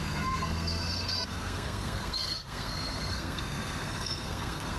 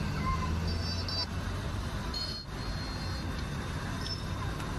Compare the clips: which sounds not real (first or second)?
first